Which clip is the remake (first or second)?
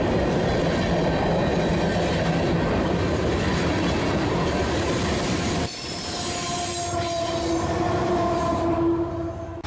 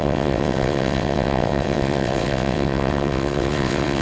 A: second